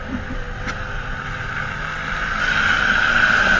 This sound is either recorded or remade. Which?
recorded